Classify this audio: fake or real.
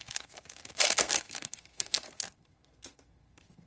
fake